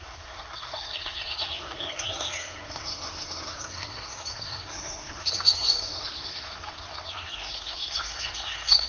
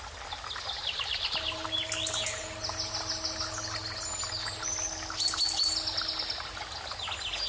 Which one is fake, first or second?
first